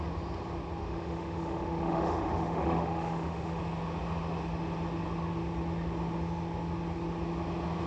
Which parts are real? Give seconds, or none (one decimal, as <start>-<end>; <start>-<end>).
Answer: 0.0-0.8; 3.6-7.9